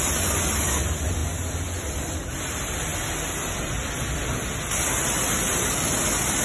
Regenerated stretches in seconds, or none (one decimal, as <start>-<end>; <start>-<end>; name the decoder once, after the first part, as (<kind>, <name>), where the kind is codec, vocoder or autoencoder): none